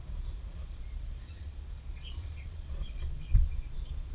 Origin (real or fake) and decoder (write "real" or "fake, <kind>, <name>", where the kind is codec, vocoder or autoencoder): fake, vocoder, Vocos